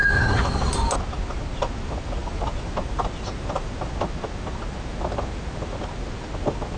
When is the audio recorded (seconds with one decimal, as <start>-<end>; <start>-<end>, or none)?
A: 0.0-2.2; 3.9-6.8